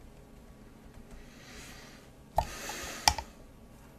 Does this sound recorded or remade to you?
recorded